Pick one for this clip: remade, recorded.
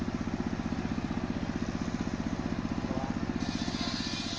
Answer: recorded